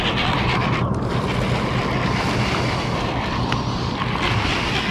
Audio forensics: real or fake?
real